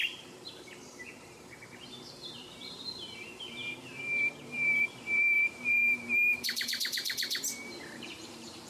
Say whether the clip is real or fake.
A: fake